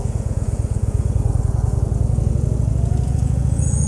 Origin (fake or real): fake